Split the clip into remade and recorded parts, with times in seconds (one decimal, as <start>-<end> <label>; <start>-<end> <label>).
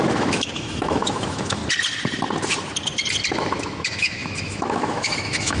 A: 0.0-1.6 remade; 1.6-3.3 recorded; 3.3-5.6 remade